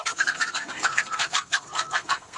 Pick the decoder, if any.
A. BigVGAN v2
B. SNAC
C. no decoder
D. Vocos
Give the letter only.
B